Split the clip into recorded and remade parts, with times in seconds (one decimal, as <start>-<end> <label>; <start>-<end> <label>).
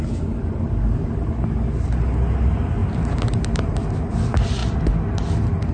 0.0-2.8 recorded; 2.8-4.1 remade; 4.1-5.7 recorded